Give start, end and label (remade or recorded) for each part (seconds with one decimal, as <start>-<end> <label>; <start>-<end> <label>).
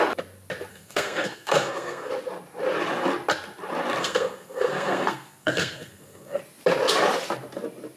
0.0-0.7 recorded; 0.7-2.1 remade; 2.1-4.0 recorded; 4.0-6.4 remade; 6.4-8.0 recorded